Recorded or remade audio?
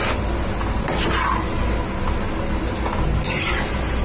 recorded